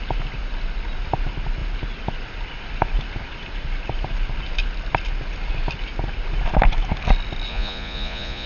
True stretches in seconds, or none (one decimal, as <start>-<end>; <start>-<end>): 0.0-7.5